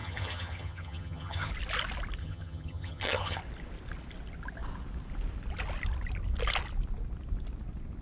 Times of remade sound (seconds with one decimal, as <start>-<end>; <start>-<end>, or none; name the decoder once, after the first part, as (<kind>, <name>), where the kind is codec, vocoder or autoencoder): 0.0-1.5 (vocoder, HiFi-GAN); 2.2-3.4